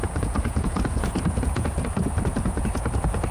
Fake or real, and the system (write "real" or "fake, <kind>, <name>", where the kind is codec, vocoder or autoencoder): fake, vocoder, Vocos